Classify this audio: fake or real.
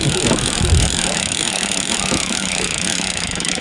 fake